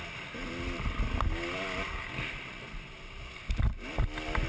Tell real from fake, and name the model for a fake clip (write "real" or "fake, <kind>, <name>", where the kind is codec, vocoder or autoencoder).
real